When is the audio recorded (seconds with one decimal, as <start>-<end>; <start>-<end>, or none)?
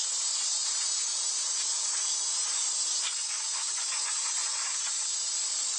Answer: 3.5-4.4